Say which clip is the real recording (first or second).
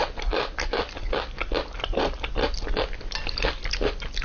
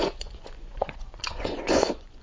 first